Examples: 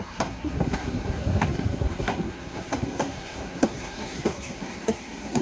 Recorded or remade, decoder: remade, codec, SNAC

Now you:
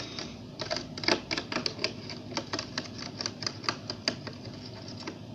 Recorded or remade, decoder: recorded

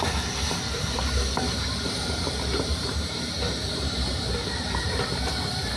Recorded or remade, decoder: remade, vocoder, BigVGAN v2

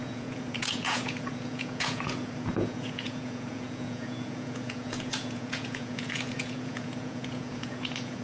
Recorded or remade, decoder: remade, vocoder, Vocos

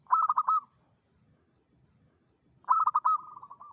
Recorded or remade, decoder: recorded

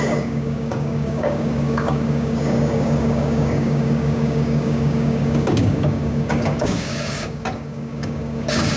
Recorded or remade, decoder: remade, codec, DAC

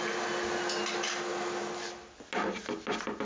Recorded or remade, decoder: recorded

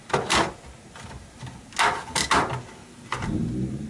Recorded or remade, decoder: recorded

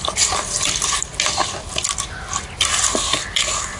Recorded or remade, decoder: recorded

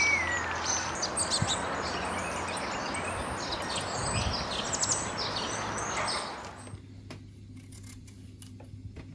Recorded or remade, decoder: recorded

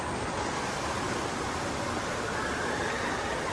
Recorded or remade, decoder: recorded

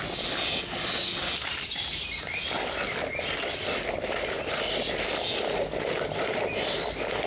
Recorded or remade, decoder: recorded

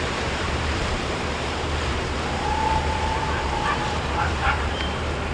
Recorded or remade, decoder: remade, vocoder, BigVGAN v2